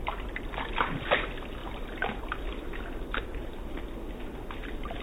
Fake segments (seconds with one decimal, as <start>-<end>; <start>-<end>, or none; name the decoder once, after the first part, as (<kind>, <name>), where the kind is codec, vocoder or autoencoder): 1.6-2.2 (vocoder, BigVGAN v2)